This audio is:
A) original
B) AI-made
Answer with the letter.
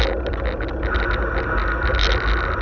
A